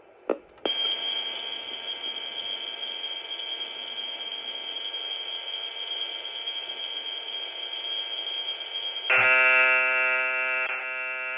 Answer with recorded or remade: recorded